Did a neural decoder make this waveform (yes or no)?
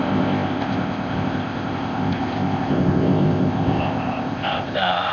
yes